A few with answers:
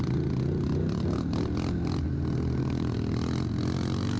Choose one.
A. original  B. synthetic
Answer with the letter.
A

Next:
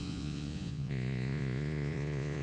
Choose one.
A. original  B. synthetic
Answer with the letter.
B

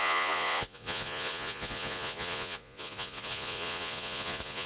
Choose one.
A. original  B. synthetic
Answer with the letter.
B